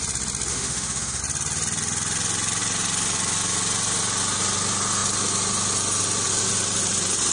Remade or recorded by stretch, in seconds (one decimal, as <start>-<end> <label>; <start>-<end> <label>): 0.0-0.5 recorded; 0.5-1.2 remade; 1.2-7.3 recorded